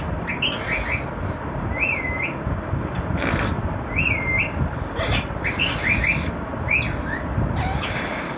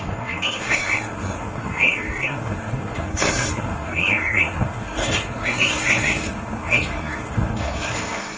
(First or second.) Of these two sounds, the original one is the first